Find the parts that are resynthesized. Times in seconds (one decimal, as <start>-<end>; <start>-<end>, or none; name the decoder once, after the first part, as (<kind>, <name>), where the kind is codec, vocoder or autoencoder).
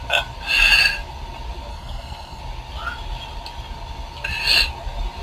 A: 1.7-2.4 (codec, SNAC)